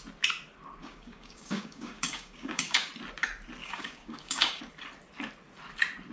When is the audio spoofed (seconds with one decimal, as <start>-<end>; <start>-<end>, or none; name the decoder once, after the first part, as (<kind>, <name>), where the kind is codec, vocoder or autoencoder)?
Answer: 0.8-2.9 (codec, DAC); 3.6-4.6